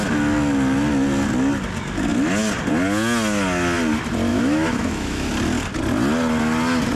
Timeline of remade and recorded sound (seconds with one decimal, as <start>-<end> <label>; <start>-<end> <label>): 0.0-4.3 recorded; 4.3-5.3 remade; 5.3-6.9 recorded